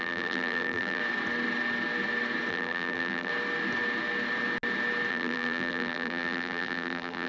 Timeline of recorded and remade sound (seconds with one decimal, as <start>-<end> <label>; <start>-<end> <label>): 0.0-1.0 remade; 1.0-2.5 recorded; 2.5-3.3 remade; 3.3-5.1 recorded; 5.1-7.3 remade